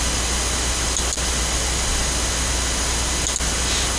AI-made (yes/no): no